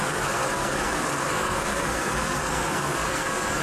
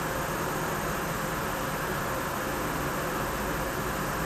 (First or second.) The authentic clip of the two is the second